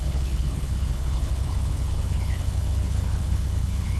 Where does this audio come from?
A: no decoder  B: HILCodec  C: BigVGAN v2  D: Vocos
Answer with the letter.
B